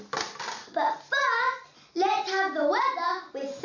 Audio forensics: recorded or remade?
recorded